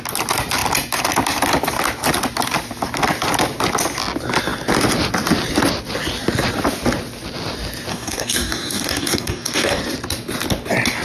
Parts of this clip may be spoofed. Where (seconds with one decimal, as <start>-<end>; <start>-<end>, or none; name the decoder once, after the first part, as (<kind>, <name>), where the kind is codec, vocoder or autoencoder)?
7.9-9.8 (codec, DAC)